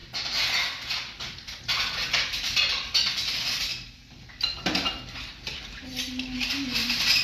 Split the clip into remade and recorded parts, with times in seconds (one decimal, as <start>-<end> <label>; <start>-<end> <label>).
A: 0.0-7.2 recorded